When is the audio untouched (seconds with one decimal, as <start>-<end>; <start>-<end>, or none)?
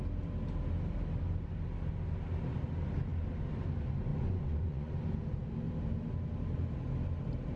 0.0-4.1; 4.9-7.6